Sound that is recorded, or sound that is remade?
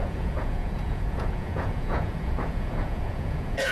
remade